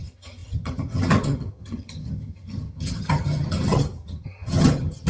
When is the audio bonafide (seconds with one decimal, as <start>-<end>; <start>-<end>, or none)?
none